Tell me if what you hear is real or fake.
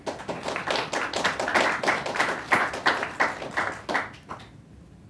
real